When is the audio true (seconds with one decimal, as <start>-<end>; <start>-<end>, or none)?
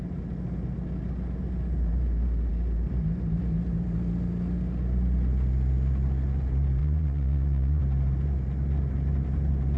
0.0-6.8; 7.8-9.8